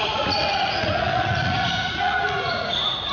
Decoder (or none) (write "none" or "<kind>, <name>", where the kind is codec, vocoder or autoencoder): vocoder, Vocos